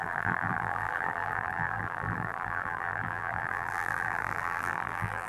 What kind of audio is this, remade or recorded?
remade